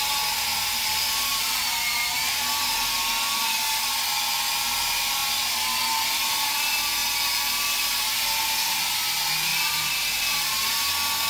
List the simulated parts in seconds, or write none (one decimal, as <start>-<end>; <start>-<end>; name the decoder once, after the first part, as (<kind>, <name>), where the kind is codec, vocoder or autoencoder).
1.3-2.3 (vocoder, BigVGAN v2); 9.5-10.9